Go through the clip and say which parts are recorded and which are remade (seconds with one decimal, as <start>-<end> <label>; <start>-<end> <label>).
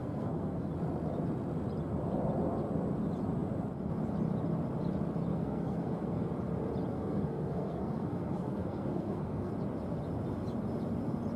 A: 0.0-0.7 remade; 0.7-5.3 recorded; 5.3-6.3 remade; 6.3-6.9 recorded; 6.9-9.5 remade; 9.5-11.4 recorded